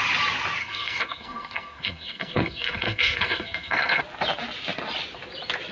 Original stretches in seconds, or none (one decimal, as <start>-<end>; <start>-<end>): 0.0-0.6; 4.0-5.7

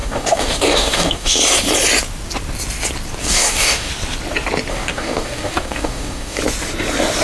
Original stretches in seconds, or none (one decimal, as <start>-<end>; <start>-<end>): 1.4-3.2; 3.9-4.7; 6.4-7.2

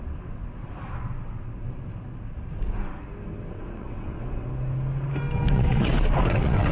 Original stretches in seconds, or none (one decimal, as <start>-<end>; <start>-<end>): 0.4-3.5; 4.5-5.5